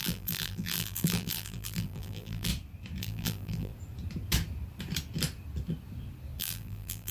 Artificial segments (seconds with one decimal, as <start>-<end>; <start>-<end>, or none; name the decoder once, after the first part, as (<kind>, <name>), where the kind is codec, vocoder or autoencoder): 0.0-2.5 (vocoder, BigVGAN v2); 3.0-3.7; 6.4-7.1